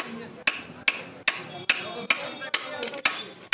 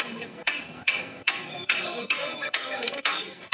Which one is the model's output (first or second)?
second